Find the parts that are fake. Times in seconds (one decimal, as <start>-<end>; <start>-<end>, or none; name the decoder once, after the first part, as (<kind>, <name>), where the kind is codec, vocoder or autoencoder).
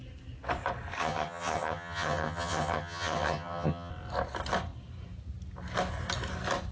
1.0-3.9 (vocoder, HiFi-GAN)